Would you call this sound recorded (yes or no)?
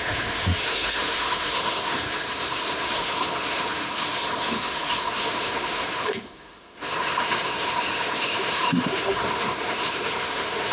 no